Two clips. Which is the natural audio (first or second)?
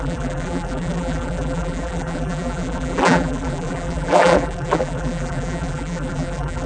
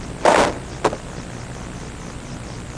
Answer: second